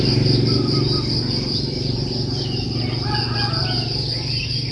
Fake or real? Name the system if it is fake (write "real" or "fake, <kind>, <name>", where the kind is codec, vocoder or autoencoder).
real